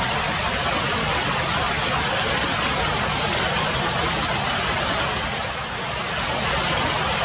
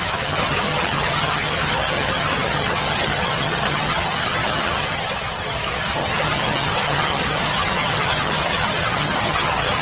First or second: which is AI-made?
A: second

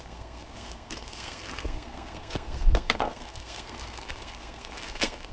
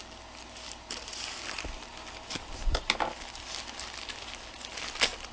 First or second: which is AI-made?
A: first